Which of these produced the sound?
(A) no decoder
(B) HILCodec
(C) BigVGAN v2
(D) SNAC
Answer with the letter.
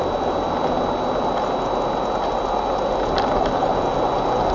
A